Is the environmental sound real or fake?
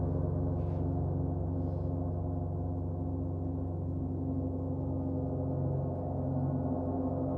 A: real